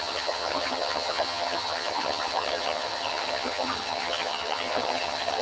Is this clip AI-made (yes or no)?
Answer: yes